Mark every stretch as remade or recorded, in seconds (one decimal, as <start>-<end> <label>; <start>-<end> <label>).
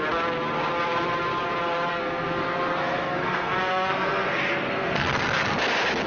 0.0-1.9 recorded; 1.9-5.6 remade; 5.6-6.1 recorded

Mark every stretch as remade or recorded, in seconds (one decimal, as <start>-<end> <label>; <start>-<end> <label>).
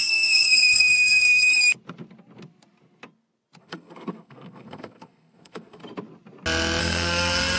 0.0-1.5 remade; 1.5-3.6 recorded; 3.6-5.8 remade; 5.8-6.8 recorded; 6.8-7.6 remade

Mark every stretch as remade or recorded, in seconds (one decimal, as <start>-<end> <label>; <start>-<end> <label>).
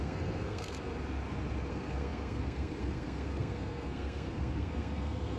0.0-0.9 remade; 0.9-1.7 recorded; 1.7-5.4 remade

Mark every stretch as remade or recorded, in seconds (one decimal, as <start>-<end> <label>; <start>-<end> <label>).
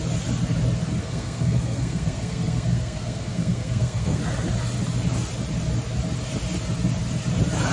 0.0-1.0 recorded; 1.0-4.2 remade; 4.2-7.7 recorded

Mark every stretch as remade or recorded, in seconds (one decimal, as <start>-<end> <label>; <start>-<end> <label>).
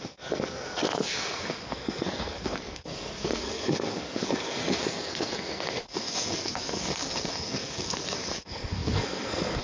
0.0-9.6 remade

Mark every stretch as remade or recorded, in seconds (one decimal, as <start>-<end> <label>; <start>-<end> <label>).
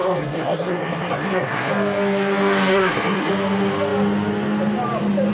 0.0-1.7 remade; 1.7-2.7 recorded; 2.7-3.3 remade; 3.3-5.3 recorded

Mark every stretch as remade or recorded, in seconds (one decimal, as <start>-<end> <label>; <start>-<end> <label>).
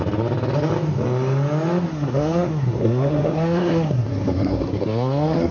0.0-1.9 recorded; 1.9-5.5 remade